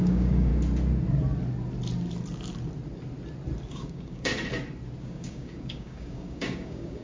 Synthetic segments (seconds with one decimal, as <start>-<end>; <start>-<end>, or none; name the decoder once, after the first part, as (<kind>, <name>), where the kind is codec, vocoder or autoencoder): 0.0-0.5 (codec, DAC); 3.7-4.3; 5.0-7.0